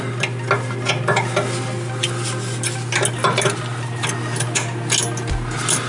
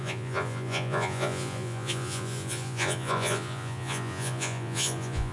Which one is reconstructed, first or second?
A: second